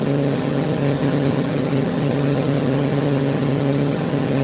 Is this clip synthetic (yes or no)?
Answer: yes